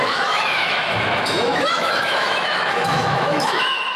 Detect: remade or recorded remade